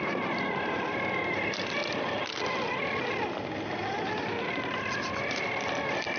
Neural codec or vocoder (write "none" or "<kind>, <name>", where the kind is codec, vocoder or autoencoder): none